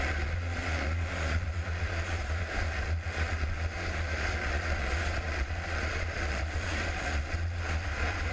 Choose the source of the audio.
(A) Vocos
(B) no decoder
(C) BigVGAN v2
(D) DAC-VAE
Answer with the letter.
A